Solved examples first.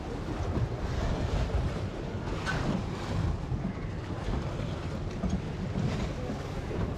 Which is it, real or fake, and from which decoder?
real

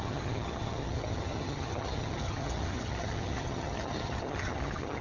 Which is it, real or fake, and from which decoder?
fake, vocoder, HiFi-GAN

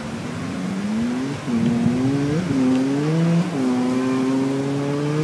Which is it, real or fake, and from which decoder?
real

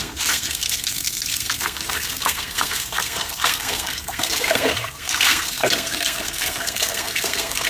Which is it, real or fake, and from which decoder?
fake, codec, SNAC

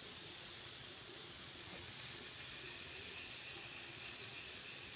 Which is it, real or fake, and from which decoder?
fake, vocoder, Vocos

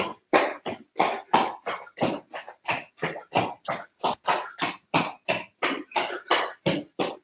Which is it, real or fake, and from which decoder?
real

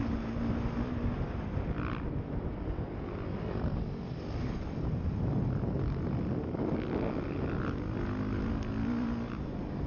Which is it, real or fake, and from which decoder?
real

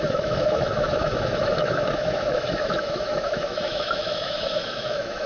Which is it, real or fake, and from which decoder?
fake, autoencoder, DAC-VAE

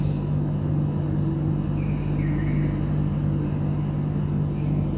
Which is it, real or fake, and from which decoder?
real